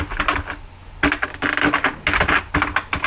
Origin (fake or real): real